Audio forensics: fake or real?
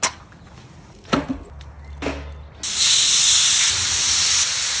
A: real